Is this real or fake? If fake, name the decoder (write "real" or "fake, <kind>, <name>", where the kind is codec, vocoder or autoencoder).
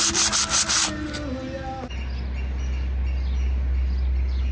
real